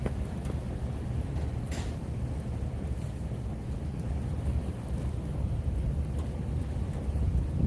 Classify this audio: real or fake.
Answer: real